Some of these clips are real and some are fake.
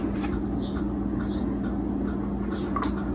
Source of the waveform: real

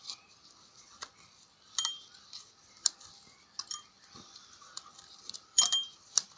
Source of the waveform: fake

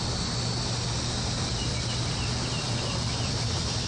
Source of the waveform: real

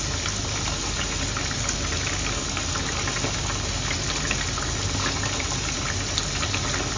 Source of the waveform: real